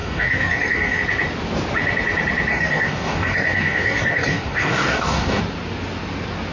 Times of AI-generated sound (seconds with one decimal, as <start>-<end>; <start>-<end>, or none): 0.0-1.0; 2.5-5.4

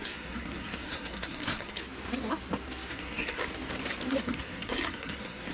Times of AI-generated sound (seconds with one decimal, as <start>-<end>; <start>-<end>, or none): 0.0-1.8; 2.9-3.4; 4.2-5.5

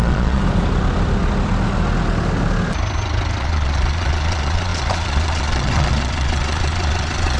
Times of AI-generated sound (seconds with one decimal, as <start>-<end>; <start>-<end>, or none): 0.0-0.4; 3.4-7.4

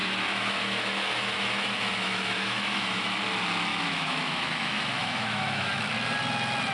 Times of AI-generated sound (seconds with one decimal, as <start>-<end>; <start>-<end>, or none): 0.0-3.2; 3.7-5.8

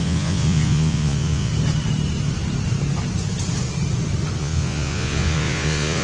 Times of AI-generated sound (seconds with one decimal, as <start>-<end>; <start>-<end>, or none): 0.0-1.5; 4.4-6.0

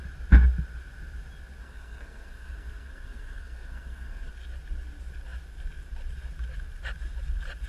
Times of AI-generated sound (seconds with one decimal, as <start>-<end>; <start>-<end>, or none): 1.6-4.3

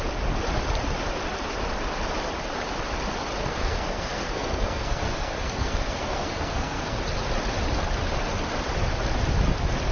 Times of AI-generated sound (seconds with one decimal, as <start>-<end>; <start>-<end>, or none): 3.4-7.0